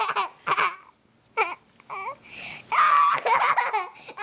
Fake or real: real